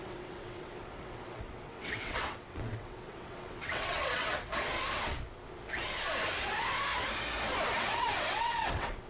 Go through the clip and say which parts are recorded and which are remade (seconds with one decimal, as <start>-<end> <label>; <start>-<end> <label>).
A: 0.0-4.5 remade; 4.5-7.8 recorded; 7.8-9.1 remade